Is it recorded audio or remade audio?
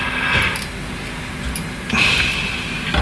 recorded